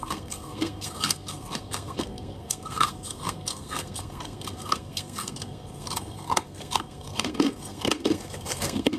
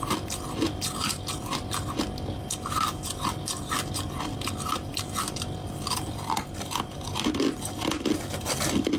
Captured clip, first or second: second